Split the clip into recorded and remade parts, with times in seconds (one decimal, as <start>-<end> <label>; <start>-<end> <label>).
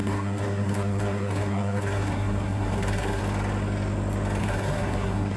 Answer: 0.0-3.2 remade; 3.2-4.4 recorded; 4.4-5.4 remade